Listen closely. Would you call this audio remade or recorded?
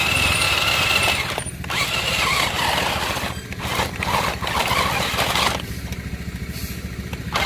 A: recorded